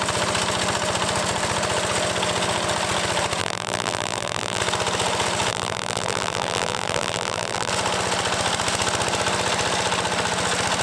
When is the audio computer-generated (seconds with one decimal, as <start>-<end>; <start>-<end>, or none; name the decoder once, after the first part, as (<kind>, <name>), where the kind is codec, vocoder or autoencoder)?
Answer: 3.4-4.6 (vocoder, BigVGAN v2); 5.5-7.7